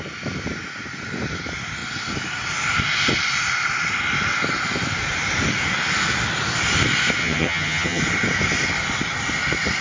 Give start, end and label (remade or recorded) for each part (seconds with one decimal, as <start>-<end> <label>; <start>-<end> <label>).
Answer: 0.0-7.2 recorded; 7.2-8.0 remade; 8.0-9.8 recorded